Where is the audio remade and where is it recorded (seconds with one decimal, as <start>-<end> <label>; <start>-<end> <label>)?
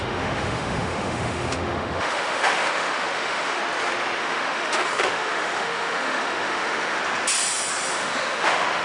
0.0-3.6 remade; 3.6-4.2 recorded; 4.2-7.0 remade; 7.0-7.9 recorded; 7.9-8.8 remade